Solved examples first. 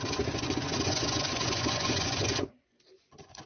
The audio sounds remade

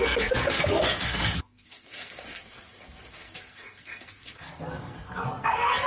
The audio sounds remade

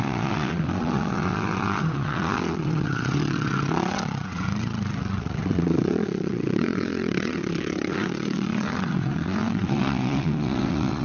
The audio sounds remade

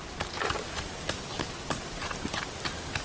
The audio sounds recorded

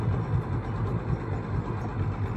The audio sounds recorded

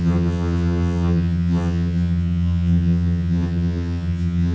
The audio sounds remade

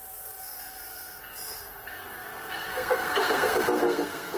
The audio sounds remade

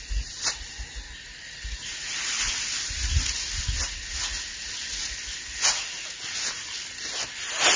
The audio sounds recorded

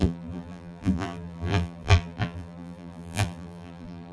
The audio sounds remade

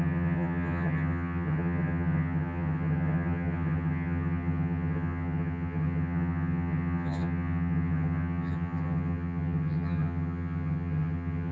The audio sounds remade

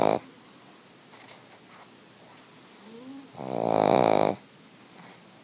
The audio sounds recorded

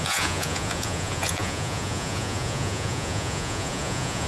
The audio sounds remade